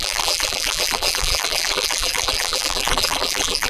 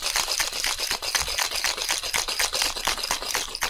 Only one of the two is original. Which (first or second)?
second